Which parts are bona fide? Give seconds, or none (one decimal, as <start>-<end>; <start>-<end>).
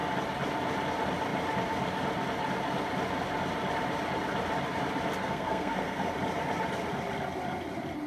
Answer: 0.0-5.2; 6.1-8.1